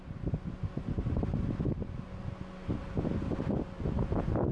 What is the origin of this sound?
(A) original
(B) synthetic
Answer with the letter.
A